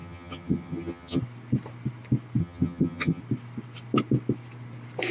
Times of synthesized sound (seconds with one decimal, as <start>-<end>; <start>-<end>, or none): 0.0-1.2; 2.4-3.2